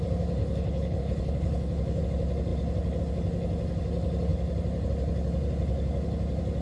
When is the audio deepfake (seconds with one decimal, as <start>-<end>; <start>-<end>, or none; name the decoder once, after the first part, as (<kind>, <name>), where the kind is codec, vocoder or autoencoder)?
0.4-2.0 (codec, HILCodec)